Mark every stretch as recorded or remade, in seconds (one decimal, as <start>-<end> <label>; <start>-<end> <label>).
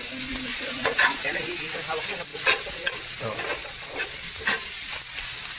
0.0-0.5 recorded; 0.5-1.6 remade; 1.6-2.3 recorded; 2.3-2.9 remade; 2.9-3.5 recorded; 3.5-4.1 remade; 4.1-5.6 recorded